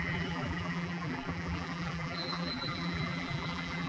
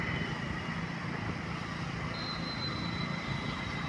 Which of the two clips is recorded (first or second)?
second